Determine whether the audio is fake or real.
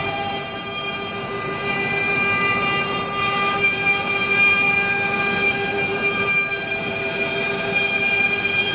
fake